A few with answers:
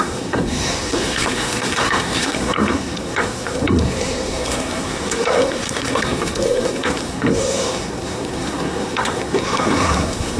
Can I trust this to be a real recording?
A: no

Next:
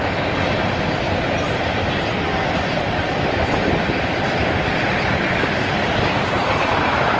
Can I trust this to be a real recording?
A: yes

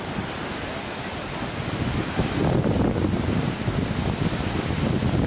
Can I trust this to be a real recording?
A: yes